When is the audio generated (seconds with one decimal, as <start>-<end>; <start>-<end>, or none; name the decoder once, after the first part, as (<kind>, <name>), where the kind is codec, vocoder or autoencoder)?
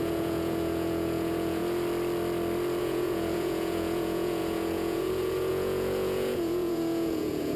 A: 0.0-1.6 (vocoder, Vocos); 2.8-7.6